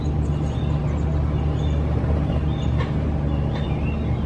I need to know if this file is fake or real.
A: real